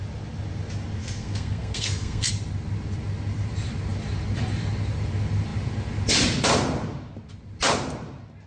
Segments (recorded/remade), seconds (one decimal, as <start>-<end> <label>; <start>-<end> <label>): 0.0-1.0 recorded; 1.0-2.3 remade; 2.3-8.5 recorded